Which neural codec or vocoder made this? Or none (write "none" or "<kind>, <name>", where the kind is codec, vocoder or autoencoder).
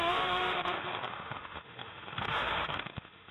autoencoder, DAC-VAE